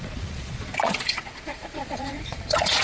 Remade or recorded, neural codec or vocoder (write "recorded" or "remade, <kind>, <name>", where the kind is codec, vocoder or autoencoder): remade, vocoder, Vocos